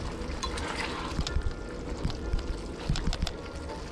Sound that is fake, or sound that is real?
real